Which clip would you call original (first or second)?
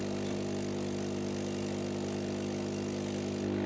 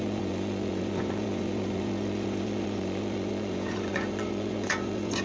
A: first